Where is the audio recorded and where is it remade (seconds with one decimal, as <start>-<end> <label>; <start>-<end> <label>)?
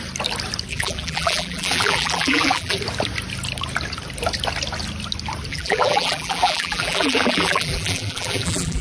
0.0-0.7 recorded; 0.7-2.8 remade; 2.8-5.5 recorded; 5.5-8.8 remade